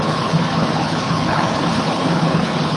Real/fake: fake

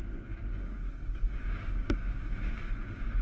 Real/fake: fake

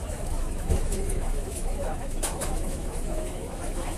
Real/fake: fake